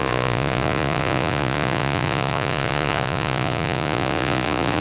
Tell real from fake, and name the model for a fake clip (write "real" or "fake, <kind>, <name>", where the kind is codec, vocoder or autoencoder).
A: fake, vocoder, Vocos